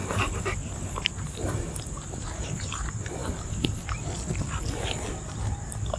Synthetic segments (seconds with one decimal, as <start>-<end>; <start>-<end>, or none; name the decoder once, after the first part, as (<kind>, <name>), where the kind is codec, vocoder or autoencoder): none